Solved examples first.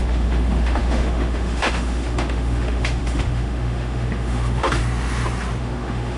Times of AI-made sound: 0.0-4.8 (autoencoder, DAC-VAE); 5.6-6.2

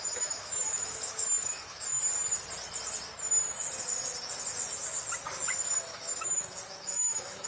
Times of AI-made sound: 0.0-2.0 (autoencoder, DAC-VAE); 5.8-7.5

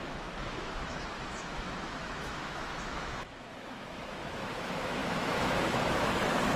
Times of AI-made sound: 0.0-6.6 (autoencoder, DAC-VAE)

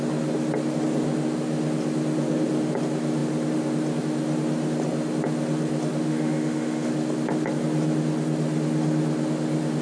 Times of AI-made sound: 6.1-6.9 (autoencoder, DAC-VAE)